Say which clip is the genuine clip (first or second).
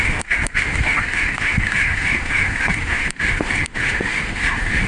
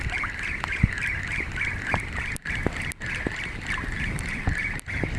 second